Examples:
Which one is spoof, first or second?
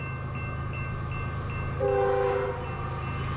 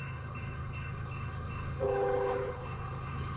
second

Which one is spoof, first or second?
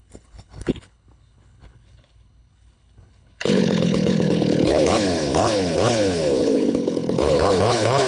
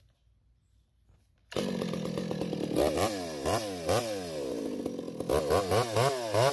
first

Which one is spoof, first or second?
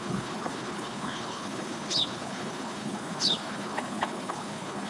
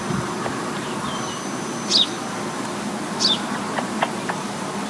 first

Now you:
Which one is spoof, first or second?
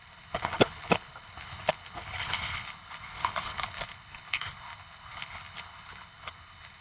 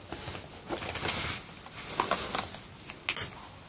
first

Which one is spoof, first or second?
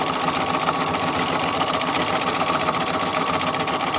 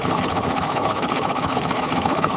second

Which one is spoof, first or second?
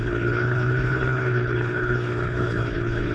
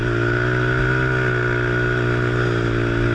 first